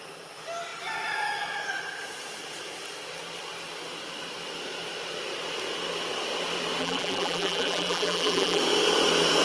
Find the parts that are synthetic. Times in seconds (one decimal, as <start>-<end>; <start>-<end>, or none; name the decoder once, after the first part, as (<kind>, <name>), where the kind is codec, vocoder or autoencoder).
6.8-8.6 (vocoder, BigVGAN v2)